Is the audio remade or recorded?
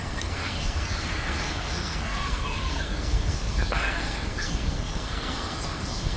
remade